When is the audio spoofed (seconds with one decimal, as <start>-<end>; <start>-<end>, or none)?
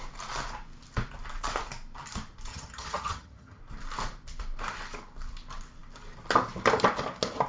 2.5-3.6